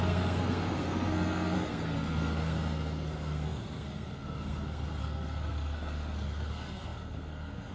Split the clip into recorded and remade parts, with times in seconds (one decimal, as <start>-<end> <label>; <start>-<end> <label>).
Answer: 0.0-7.7 remade